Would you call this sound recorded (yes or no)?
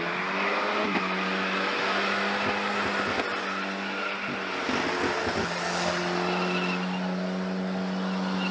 yes